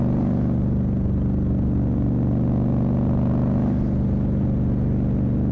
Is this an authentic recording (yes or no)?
yes